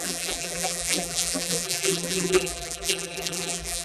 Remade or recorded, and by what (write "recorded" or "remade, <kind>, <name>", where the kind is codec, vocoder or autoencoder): remade, vocoder, BigVGAN v2